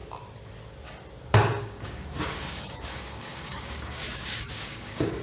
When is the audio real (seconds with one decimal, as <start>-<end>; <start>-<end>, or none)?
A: 0.0-1.6